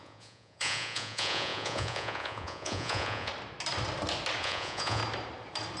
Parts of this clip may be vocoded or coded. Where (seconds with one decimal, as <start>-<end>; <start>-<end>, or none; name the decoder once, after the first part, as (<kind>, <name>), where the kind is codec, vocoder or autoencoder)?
0.0-3.3 (vocoder, Vocos); 4.4-5.0